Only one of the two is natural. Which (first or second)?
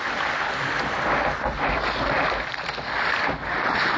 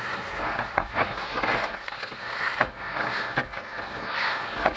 first